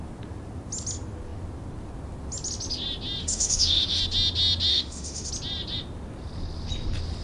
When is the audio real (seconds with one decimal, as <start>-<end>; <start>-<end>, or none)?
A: 0.0-3.2; 4.0-4.7; 5.3-7.2